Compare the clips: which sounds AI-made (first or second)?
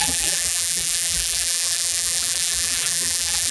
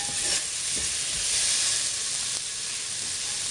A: first